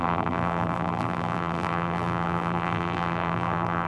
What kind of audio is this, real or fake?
fake